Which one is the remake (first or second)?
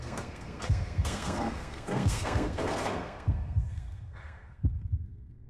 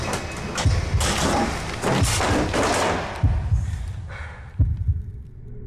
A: first